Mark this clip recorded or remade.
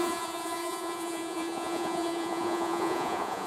remade